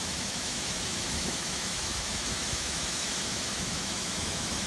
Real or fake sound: fake